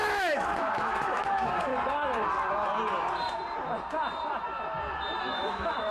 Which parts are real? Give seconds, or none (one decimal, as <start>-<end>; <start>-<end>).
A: 1.7-5.2